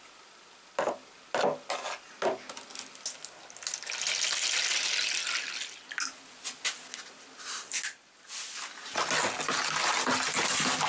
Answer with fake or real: real